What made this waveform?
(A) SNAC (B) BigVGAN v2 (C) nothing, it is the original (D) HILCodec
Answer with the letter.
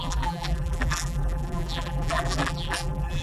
B